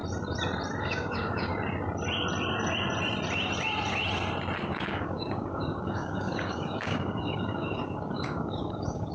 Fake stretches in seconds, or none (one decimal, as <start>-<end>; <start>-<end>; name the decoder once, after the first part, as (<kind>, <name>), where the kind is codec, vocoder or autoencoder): 0.8-1.5 (codec, DAC); 4.6-9.1